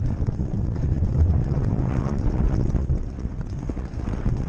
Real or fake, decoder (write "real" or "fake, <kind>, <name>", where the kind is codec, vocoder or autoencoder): fake, vocoder, WaveNeXt